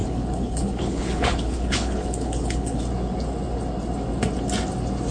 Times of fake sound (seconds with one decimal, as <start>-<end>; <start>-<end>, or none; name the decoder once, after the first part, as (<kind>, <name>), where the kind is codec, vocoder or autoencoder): 0.0-2.8 (codec, HILCodec)

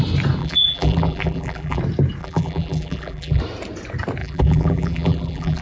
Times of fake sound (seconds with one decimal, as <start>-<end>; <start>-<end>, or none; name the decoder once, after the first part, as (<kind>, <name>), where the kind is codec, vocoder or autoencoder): 0.4-1.8 (vocoder, BigVGAN v2); 2.2-3.4; 4.2-5.6

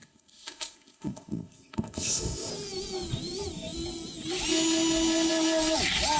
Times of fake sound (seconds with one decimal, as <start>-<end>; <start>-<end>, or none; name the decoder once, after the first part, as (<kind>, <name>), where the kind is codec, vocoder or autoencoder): 0.0-2.5 (codec, ZipCodec)

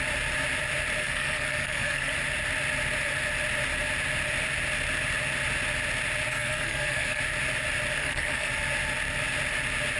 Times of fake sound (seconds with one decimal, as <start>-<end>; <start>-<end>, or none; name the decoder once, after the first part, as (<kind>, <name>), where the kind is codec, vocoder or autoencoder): 1.0-2.1 (codec, SNAC); 6.3-7.2; 8.0-8.5

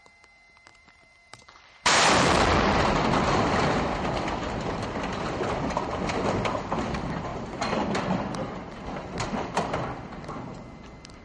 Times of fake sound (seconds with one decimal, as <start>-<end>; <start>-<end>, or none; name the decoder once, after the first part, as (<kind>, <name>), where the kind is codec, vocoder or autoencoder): 0.7-3.2 (vocoder, BigVGAN v2)

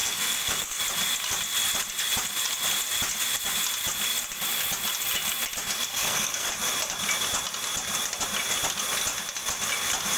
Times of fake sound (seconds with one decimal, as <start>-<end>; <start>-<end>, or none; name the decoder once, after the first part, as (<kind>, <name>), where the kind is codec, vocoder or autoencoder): 0.0-0.8 (codec, SNAC); 5.9-6.5

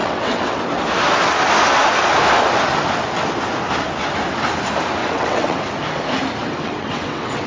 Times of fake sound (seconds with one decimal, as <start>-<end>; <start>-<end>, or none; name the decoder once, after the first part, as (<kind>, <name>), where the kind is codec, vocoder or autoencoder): 0.0-0.6 (vocoder, WaveNeXt); 5.0-5.6; 6.4-7.5